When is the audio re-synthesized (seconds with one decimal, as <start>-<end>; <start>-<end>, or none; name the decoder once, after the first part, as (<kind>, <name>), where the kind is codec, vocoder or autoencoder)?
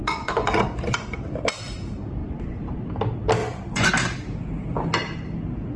0.0-1.2 (vocoder, Vocos); 2.2-2.8; 3.4-3.9